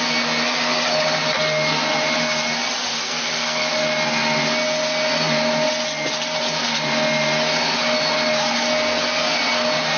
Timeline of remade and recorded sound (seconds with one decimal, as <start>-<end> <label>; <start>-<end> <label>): 0.0-2.9 recorded; 2.9-3.7 remade; 3.7-10.0 recorded